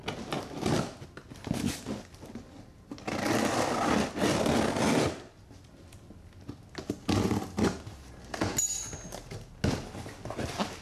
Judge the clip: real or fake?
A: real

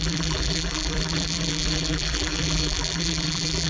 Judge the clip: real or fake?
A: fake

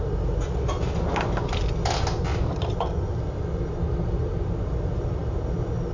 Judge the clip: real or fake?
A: real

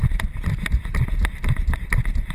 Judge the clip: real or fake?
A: real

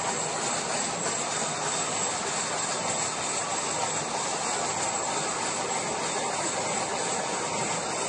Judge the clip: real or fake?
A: real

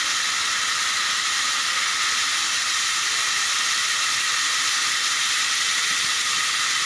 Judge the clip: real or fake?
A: real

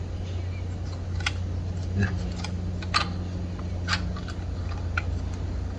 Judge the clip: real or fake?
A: real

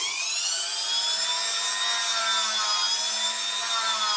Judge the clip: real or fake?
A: real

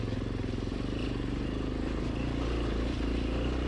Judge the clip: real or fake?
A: real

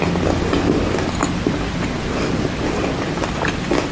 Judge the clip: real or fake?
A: real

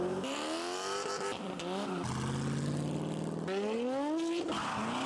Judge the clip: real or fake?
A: real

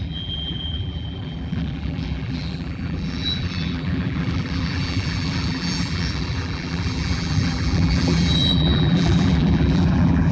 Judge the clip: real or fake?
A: fake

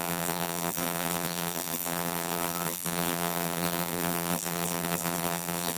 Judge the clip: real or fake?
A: fake